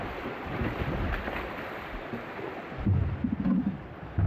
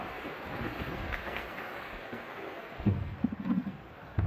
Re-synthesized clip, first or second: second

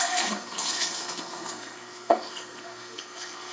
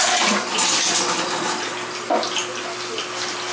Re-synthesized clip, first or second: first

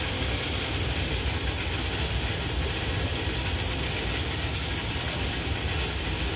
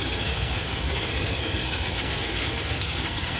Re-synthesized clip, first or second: second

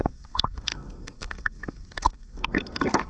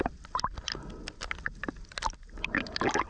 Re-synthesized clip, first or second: first